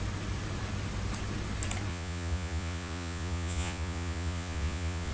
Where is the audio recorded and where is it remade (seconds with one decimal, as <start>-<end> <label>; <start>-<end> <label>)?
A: 0.0-1.9 recorded; 1.9-5.1 remade